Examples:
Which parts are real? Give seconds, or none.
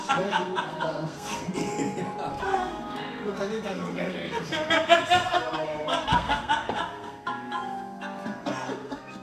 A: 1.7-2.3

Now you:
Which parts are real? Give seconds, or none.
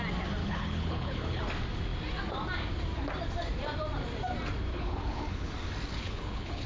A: 0.0-0.4; 1.4-4.7; 5.5-5.9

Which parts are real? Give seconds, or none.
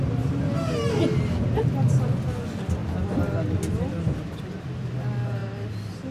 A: 0.0-6.1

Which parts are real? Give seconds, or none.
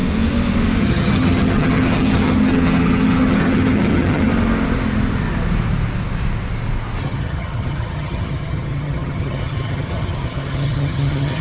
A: 0.0-0.8; 4.3-7.0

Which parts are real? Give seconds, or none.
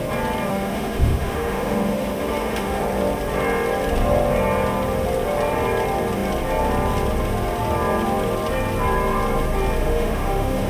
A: 0.0-0.5; 2.8-9.8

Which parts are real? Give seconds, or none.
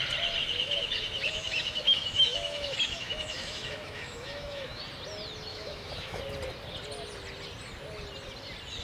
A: 0.0-0.4; 4.8-5.5; 6.2-8.8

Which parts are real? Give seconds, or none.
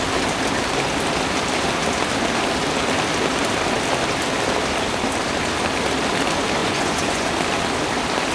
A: 0.0-6.6; 7.3-8.3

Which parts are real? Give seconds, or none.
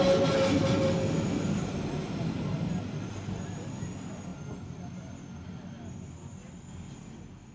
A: 0.0-7.5